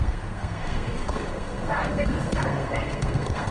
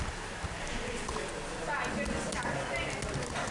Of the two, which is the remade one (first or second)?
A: first